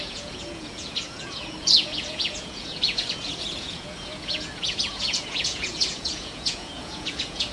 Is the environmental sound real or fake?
fake